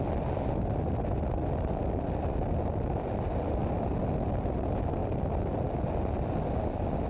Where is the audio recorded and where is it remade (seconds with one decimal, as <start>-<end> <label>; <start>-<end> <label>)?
0.0-7.1 recorded